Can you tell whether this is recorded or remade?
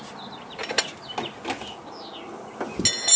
recorded